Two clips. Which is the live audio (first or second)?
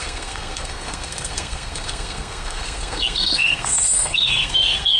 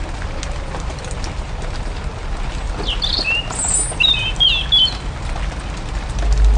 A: second